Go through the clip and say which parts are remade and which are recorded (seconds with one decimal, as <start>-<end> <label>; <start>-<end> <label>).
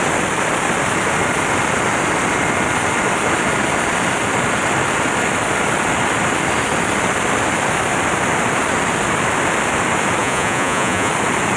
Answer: 0.0-10.2 recorded; 10.2-11.1 remade; 11.1-11.6 recorded